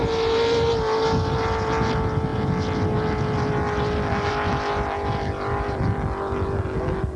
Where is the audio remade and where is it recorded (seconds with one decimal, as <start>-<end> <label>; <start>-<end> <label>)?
0.0-7.2 recorded